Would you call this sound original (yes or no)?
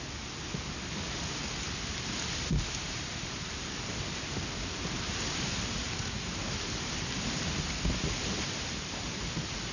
yes